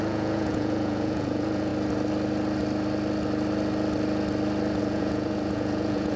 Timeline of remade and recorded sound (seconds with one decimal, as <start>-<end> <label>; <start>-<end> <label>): 0.0-1.7 remade; 1.7-4.8 recorded; 4.8-6.2 remade